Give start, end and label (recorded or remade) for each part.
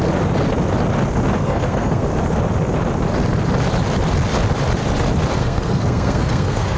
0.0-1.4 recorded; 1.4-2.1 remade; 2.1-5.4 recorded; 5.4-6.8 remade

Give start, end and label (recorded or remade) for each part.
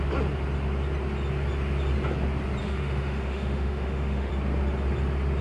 0.0-2.6 recorded; 2.6-4.3 remade; 4.3-5.4 recorded